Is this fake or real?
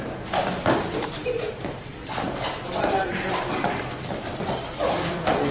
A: real